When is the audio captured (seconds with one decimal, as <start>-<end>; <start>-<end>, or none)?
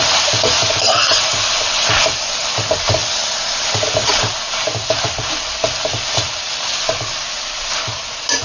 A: 0.0-8.4